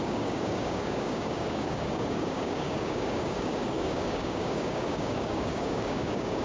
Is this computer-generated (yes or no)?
yes